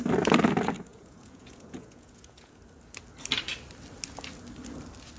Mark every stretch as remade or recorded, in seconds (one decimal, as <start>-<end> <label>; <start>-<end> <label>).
0.0-0.9 recorded; 0.9-2.6 remade; 2.6-5.2 recorded